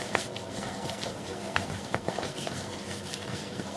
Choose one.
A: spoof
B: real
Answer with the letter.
A